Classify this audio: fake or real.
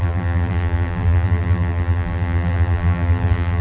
fake